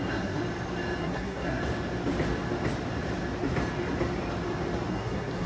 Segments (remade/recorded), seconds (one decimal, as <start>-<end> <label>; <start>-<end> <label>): 0.0-0.4 remade; 0.4-1.0 recorded; 1.0-1.6 remade; 1.6-4.9 recorded; 4.9-5.5 remade